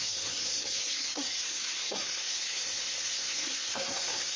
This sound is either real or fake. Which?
fake